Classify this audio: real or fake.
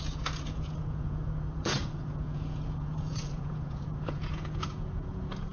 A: fake